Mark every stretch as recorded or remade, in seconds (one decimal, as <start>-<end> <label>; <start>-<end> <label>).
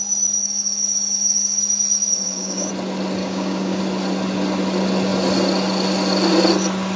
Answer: 0.0-0.4 recorded; 0.4-1.6 remade; 1.6-2.1 recorded; 2.1-2.7 remade; 2.7-3.2 recorded; 3.2-3.8 remade; 3.8-7.0 recorded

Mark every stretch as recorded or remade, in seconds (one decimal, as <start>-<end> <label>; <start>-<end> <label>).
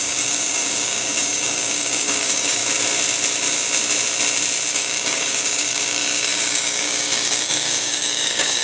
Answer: 0.0-2.6 remade; 2.6-4.7 recorded; 4.7-8.6 remade